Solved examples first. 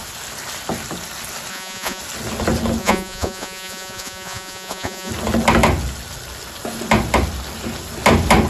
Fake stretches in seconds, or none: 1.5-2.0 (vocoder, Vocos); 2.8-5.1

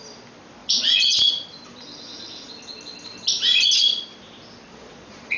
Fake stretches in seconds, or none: 0.6-1.3 (vocoder, Vocos); 4.7-5.4

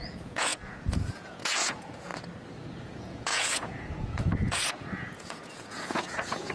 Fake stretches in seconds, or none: 0.0-2.1 (vocoder, Vocos); 2.8-6.5

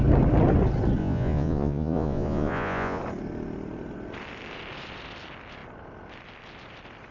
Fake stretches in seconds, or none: 1.0-3.0 (vocoder, Vocos)

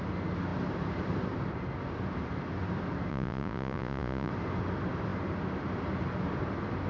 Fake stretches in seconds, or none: 3.1-4.3 (vocoder, Vocos)

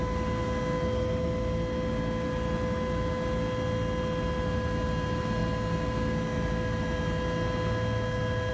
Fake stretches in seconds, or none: none

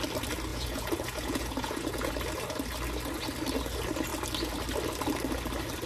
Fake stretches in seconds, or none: 0.5-2.1 (vocoder, Vocos)